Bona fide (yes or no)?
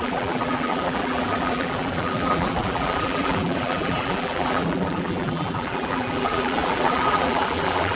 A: no